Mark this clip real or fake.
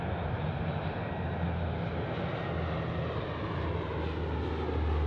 real